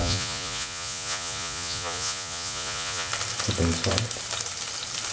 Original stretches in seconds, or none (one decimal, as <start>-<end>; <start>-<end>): 3.1-5.1